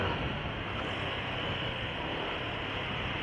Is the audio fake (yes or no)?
no